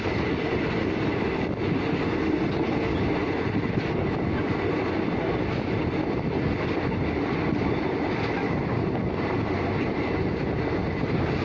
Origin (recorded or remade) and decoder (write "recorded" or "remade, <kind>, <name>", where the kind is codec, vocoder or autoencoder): recorded